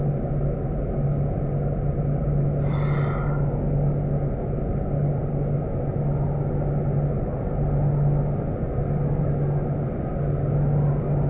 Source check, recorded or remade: recorded